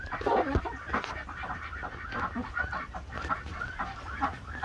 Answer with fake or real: real